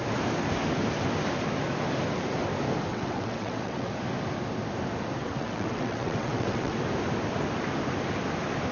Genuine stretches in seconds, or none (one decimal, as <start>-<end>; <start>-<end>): 0.0-2.9; 3.9-5.2; 6.7-8.7